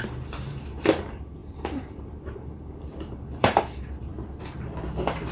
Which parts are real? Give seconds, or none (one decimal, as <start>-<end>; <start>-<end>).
4.1-5.3